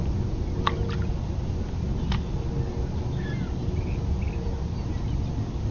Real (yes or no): yes